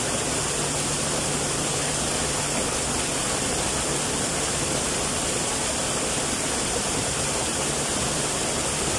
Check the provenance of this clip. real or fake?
real